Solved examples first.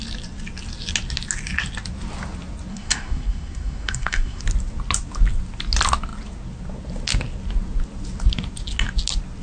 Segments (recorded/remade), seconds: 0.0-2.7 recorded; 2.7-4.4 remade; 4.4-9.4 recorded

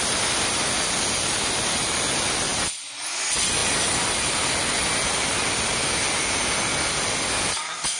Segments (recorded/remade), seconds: 0.0-8.0 recorded

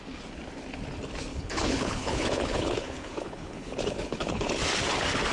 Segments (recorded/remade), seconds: 0.0-1.3 recorded; 1.3-4.5 remade; 4.5-5.3 recorded

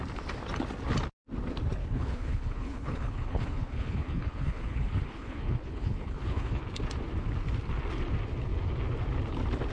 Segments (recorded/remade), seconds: 0.0-1.8 recorded; 1.8-6.6 remade; 6.6-9.7 recorded

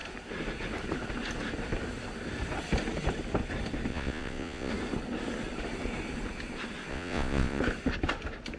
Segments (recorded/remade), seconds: 0.0-3.9 recorded; 3.9-4.7 remade; 4.7-6.9 recorded; 6.9-7.6 remade; 7.6-8.6 recorded

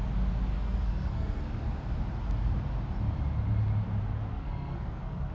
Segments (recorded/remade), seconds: 0.0-0.5 recorded; 0.5-1.7 remade; 1.7-4.3 recorded; 4.3-5.3 remade

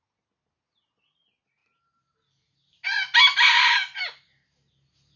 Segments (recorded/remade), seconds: 0.0-5.2 recorded